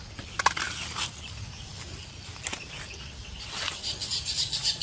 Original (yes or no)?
yes